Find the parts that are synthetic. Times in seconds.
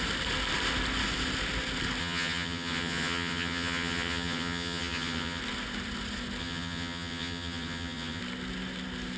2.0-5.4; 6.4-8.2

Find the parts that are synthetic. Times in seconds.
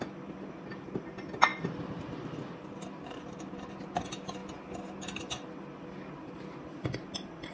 none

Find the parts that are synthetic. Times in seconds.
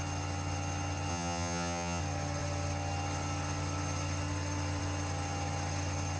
1.1-2.0